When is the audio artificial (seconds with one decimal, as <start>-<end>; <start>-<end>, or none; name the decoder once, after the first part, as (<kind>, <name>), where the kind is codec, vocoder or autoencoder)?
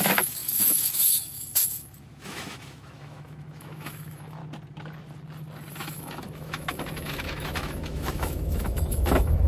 0.0-4.4 (autoencoder, DAC-VAE); 5.7-9.5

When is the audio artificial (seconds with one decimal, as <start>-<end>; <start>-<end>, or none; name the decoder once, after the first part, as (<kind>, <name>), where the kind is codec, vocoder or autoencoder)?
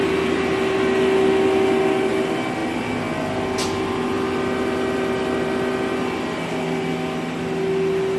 none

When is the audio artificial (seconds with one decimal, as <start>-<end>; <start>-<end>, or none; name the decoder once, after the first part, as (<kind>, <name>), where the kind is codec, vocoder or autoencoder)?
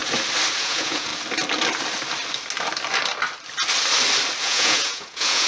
0.6-1.1 (vocoder, Vocos); 4.4-5.5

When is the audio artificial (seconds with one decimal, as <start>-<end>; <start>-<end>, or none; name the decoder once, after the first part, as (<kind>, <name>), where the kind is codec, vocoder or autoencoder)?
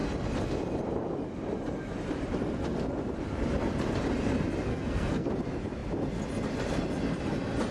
4.7-5.3 (codec, SNAC)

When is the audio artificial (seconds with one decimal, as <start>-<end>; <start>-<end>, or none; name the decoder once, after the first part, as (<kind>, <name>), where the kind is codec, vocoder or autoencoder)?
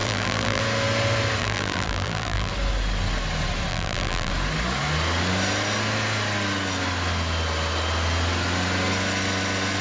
0.0-0.6 (vocoder, BigVGAN v2); 1.4-2.5; 3.7-4.3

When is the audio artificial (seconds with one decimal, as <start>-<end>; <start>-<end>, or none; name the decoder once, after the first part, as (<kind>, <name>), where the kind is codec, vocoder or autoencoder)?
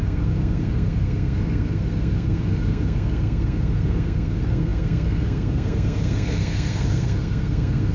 0.0-7.9 (codec, SNAC)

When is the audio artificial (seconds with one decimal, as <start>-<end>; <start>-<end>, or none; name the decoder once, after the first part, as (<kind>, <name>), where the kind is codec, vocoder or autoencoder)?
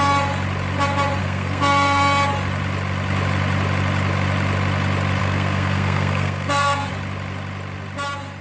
1.2-2.0 (codec, SNAC); 5.2-6.9